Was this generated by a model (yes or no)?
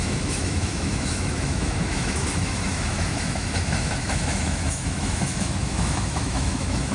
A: yes